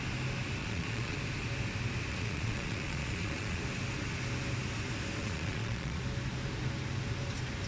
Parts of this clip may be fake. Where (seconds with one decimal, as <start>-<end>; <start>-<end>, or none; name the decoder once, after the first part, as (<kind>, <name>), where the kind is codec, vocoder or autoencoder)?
0.6-1.2 (vocoder, Vocos); 2.1-3.6; 5.2-6.0